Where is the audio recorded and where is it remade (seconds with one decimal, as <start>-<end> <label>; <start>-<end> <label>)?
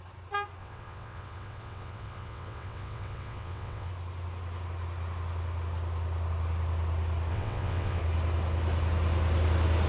0.0-0.6 recorded; 0.6-3.9 remade; 3.9-7.3 recorded; 7.3-8.0 remade; 8.0-9.9 recorded